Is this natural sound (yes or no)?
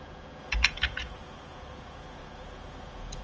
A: no